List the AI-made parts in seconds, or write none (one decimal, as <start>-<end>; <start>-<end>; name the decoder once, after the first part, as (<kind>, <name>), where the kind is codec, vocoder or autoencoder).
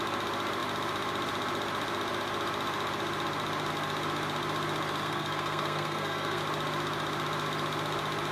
5.0-6.4 (codec, SNAC)